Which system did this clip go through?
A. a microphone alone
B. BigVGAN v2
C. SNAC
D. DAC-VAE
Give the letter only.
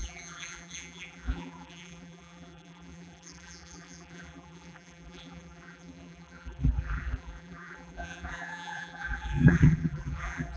B